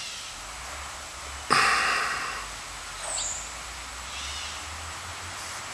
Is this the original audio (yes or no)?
yes